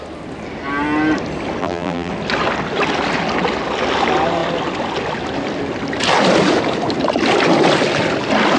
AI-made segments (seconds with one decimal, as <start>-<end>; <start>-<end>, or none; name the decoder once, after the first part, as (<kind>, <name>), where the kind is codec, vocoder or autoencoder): 1.6-2.1 (vocoder, BigVGAN v2)